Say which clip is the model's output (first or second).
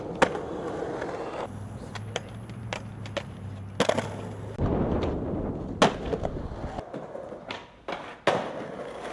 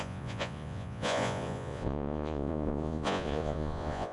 second